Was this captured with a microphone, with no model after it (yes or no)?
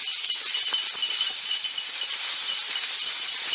yes